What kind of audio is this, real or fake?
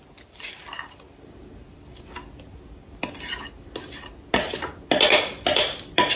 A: real